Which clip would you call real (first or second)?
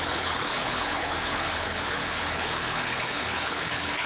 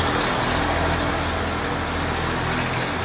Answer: second